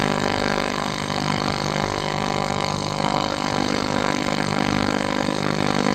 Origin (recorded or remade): remade